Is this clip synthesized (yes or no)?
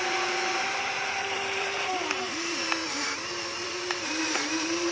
yes